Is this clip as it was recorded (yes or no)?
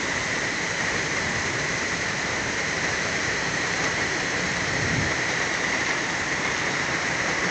no